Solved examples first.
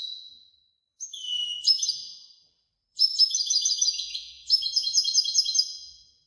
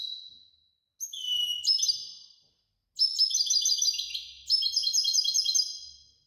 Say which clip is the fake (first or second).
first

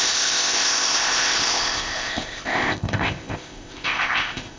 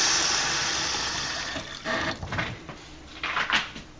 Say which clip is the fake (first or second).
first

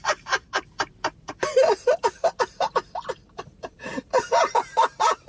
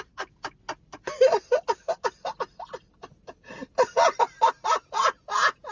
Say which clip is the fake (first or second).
first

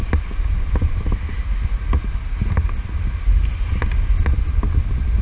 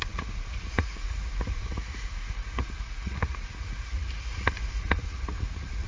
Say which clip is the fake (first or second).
second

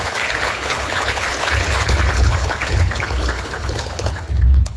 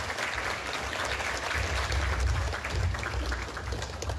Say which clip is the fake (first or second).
first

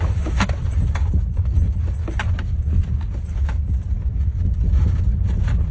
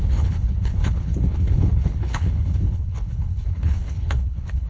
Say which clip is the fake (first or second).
second